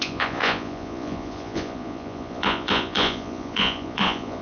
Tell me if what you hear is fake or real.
fake